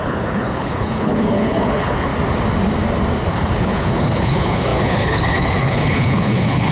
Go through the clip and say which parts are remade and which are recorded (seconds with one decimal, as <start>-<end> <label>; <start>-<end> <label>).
0.0-2.1 remade; 2.1-3.3 recorded; 3.3-6.7 remade